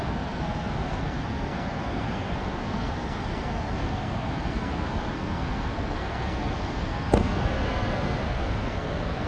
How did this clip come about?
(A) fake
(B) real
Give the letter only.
A